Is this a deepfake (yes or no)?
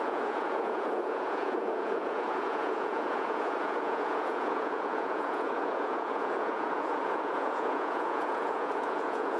yes